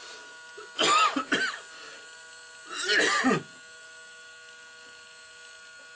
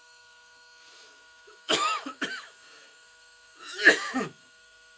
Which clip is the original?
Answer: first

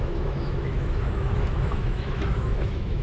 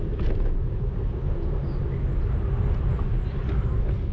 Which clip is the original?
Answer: second